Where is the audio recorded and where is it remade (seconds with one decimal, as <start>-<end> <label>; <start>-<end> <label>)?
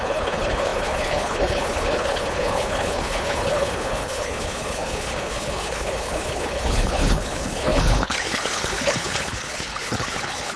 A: 0.0-10.6 remade